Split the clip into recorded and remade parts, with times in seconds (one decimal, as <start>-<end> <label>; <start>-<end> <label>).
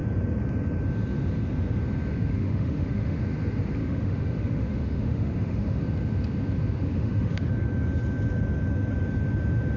0.0-2.1 recorded; 2.1-3.2 remade; 3.2-3.8 recorded; 3.8-5.8 remade; 5.8-6.8 recorded; 6.8-7.5 remade; 7.5-9.8 recorded